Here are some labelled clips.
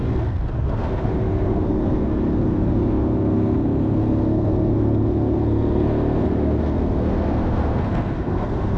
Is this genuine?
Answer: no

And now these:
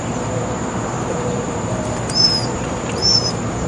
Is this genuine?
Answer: no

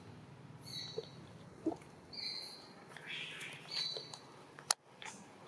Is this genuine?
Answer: yes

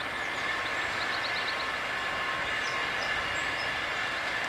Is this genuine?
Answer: yes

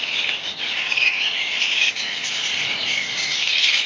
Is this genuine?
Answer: yes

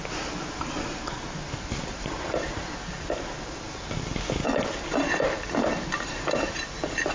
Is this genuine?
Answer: yes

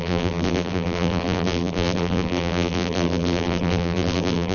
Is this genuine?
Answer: no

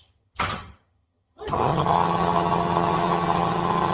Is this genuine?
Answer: no